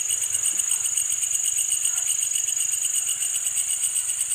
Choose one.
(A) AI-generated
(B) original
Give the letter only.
B